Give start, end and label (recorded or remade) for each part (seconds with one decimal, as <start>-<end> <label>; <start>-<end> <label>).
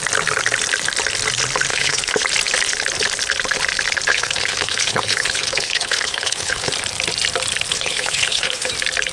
0.0-1.7 recorded; 1.7-2.2 remade; 2.2-4.1 recorded; 4.1-6.7 remade; 6.7-7.7 recorded; 7.7-8.7 remade; 8.7-9.1 recorded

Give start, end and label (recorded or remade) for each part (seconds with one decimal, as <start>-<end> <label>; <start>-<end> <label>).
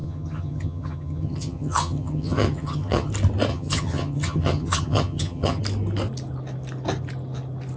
0.0-3.1 remade; 3.1-3.5 recorded; 3.5-5.6 remade; 5.6-7.8 recorded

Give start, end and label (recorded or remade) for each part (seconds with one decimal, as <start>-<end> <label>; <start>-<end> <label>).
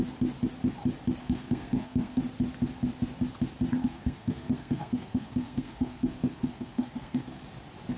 0.0-1.2 recorded; 1.2-2.2 remade; 2.2-3.8 recorded; 3.8-7.4 remade; 7.4-8.0 recorded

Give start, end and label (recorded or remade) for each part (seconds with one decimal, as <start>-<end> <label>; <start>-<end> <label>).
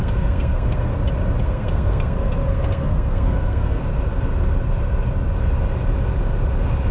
0.0-0.9 remade; 0.9-1.4 recorded; 1.4-3.8 remade; 3.8-6.9 recorded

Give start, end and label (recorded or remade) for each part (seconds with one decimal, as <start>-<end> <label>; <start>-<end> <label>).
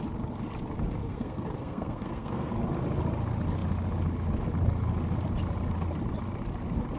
0.0-1.0 recorded; 1.0-2.5 remade; 2.5-7.0 recorded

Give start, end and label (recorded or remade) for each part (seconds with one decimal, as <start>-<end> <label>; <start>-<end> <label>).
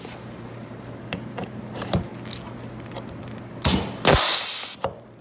0.0-2.1 remade; 2.1-5.2 recorded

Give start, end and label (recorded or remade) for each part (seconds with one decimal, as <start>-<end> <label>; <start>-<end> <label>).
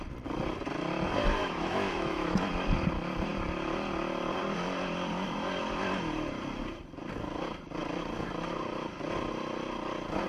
0.0-1.4 recorded; 1.4-2.5 remade; 2.5-10.3 recorded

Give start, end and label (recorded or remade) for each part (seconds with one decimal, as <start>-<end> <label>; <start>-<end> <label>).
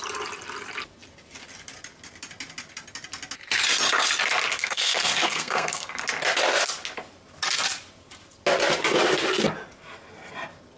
0.0-4.6 recorded; 4.6-6.0 remade; 6.0-10.8 recorded